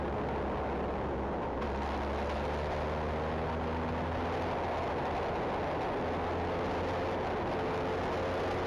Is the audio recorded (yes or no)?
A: yes